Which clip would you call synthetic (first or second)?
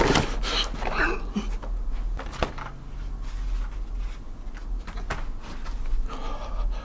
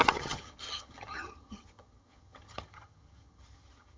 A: second